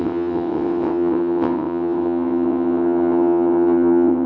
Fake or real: fake